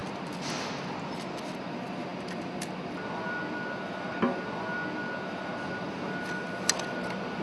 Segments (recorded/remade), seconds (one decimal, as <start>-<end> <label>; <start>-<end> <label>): 0.0-7.4 recorded